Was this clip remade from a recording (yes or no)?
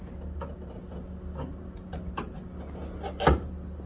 no